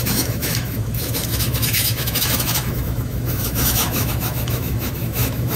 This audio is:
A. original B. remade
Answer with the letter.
B